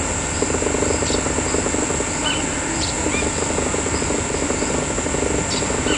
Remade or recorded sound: recorded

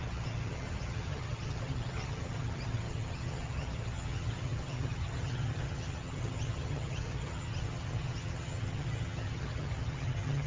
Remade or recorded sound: remade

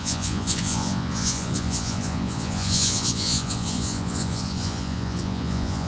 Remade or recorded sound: remade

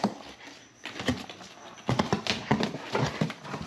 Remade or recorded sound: recorded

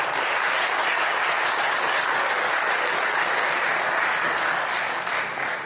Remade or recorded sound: recorded